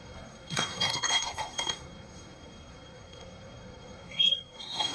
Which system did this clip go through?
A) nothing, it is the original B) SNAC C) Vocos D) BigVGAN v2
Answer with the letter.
B